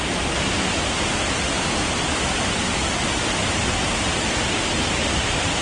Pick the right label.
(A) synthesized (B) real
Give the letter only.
B